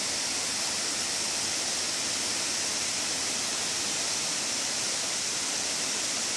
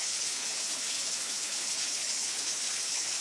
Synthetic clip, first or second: second